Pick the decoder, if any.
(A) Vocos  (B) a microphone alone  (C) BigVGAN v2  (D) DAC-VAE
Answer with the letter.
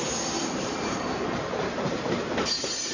C